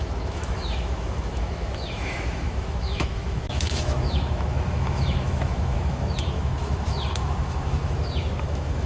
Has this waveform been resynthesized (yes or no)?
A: yes